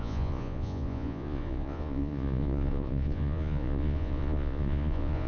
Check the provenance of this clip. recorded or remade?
remade